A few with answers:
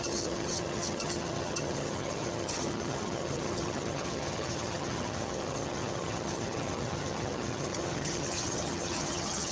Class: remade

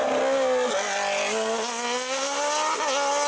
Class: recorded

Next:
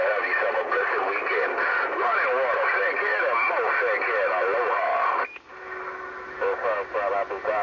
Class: recorded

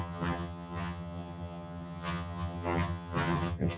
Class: remade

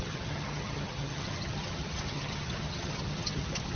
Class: remade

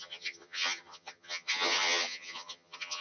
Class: remade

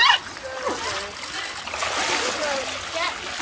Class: recorded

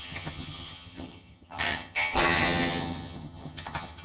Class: remade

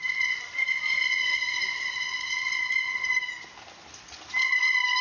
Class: recorded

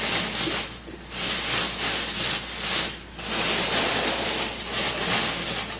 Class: recorded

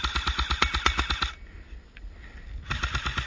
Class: recorded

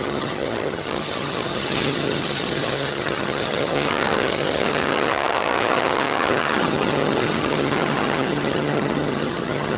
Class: remade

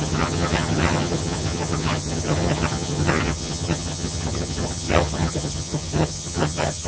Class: remade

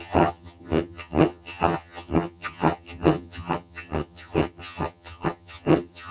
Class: remade